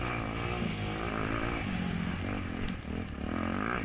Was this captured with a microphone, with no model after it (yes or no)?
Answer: yes